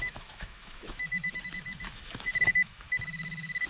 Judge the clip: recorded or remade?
remade